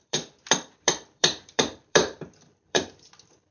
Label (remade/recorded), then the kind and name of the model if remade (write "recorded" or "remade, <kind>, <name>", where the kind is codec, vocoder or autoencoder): remade, vocoder, BigVGAN v2